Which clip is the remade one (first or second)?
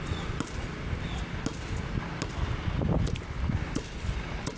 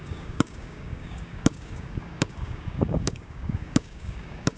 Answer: second